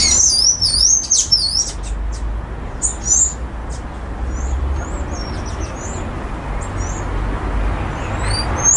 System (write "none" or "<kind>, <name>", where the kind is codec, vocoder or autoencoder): none